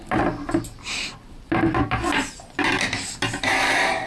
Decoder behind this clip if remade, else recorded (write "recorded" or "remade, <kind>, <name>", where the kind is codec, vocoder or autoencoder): recorded